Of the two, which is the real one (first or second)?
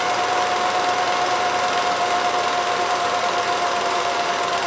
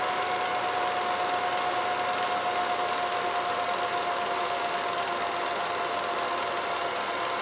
second